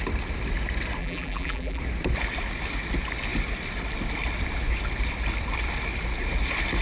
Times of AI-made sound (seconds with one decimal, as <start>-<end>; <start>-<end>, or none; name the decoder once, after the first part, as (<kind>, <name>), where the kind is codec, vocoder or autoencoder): 1.0-1.8 (vocoder, BigVGAN v2)